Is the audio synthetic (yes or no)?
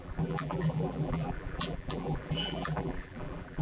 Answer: yes